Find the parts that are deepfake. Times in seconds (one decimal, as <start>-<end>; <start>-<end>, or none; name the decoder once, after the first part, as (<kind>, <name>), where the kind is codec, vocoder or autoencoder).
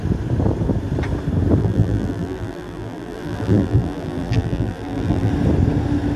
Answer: 1.6-5.3 (vocoder, BigVGAN v2)